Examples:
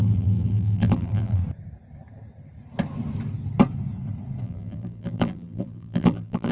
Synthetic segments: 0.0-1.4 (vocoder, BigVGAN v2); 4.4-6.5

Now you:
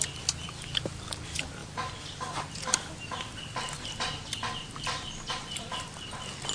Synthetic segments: none

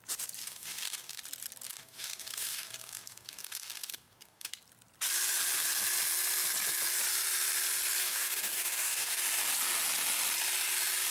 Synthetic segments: 0.4-1.2 (codec, DAC); 1.7-4.5; 8.0-9.2

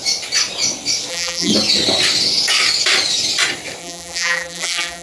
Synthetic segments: 1.1-1.5 (vocoder, BigVGAN v2); 3.8-5.0

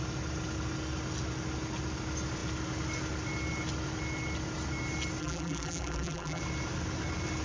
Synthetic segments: 5.2-6.4 (vocoder, BigVGAN v2)